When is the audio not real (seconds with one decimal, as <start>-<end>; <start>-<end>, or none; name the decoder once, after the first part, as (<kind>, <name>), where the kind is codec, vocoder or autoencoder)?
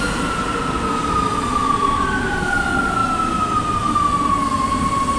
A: none